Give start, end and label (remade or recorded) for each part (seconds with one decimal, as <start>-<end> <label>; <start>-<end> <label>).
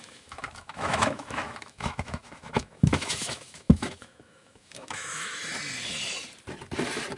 0.0-5.4 remade; 5.4-7.2 recorded